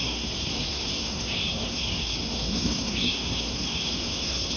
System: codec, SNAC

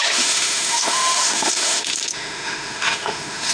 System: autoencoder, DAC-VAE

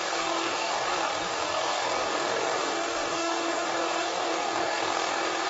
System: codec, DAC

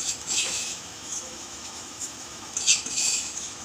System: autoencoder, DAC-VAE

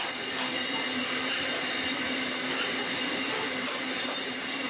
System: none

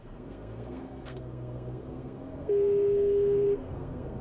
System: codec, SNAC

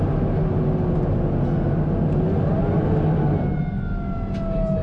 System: none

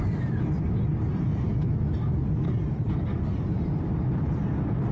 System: none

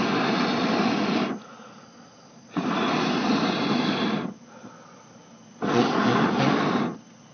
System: none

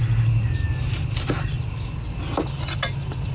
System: none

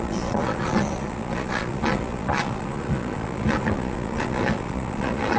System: vocoder, Vocos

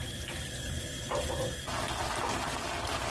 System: none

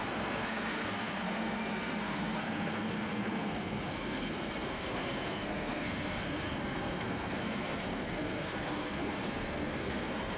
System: codec, SNAC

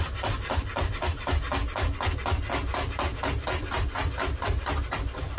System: none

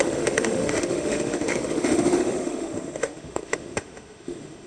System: autoencoder, DAC-VAE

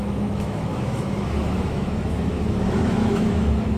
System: autoencoder, DAC-VAE